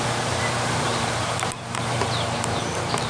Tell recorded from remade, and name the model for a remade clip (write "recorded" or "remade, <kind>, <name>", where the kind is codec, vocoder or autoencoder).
remade, vocoder, BigVGAN v2